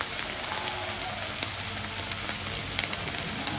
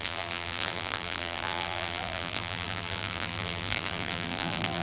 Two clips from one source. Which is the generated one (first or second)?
second